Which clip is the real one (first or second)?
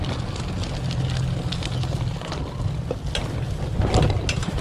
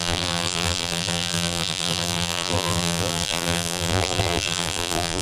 first